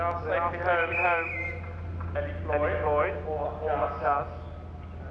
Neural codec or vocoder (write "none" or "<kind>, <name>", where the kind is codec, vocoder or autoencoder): none